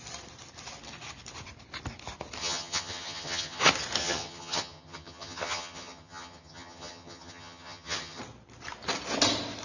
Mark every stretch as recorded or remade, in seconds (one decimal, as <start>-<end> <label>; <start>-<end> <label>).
0.0-2.4 recorded; 2.4-3.6 remade; 3.6-4.0 recorded; 4.0-8.2 remade; 8.2-9.6 recorded